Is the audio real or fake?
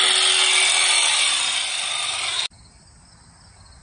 real